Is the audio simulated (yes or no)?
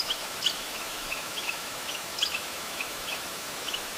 yes